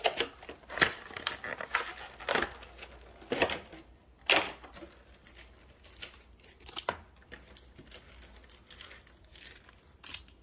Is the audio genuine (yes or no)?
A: yes